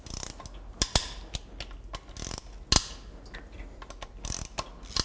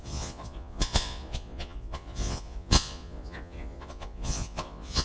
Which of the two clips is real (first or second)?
first